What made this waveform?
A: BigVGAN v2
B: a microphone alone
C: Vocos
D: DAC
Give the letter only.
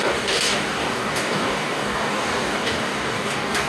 D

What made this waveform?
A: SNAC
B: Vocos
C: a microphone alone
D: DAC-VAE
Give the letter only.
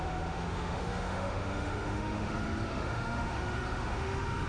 D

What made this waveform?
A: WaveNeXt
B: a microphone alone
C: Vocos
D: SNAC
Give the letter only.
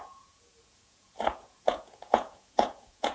C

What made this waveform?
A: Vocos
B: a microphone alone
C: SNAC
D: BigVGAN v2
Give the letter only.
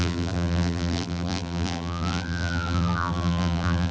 D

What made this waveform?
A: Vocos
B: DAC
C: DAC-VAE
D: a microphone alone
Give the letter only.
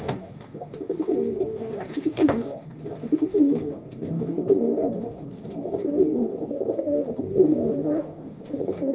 B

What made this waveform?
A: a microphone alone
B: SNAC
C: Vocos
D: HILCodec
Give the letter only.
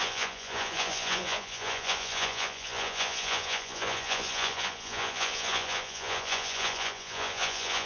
C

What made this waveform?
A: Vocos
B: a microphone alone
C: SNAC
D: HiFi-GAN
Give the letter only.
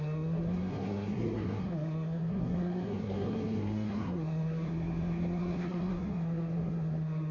C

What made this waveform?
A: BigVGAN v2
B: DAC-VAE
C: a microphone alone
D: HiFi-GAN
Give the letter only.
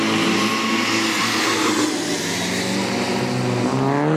C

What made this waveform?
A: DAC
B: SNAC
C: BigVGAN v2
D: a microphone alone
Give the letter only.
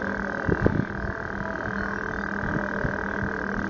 D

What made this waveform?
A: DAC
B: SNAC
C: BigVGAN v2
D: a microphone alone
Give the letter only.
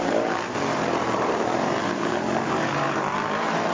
C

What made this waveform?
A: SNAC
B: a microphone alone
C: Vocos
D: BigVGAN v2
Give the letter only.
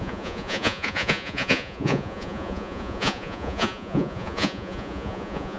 C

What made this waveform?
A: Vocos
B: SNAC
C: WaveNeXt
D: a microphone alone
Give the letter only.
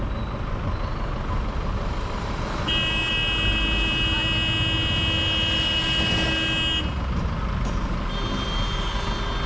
D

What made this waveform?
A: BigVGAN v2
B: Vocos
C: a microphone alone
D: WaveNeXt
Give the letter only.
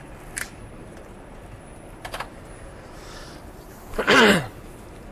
A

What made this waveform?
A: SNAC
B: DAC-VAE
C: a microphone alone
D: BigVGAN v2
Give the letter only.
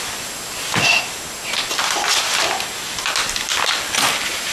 C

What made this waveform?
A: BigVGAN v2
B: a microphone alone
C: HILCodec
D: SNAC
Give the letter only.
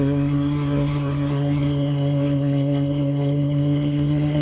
D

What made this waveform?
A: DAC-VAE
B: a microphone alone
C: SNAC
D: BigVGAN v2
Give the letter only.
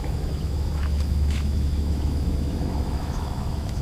A